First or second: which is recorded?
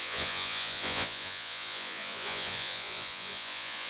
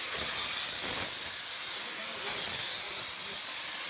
second